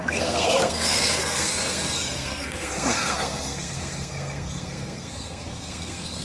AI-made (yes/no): yes